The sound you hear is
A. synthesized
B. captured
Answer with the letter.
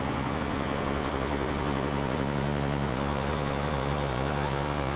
A